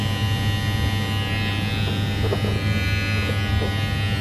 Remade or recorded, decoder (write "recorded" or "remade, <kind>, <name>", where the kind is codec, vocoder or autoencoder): recorded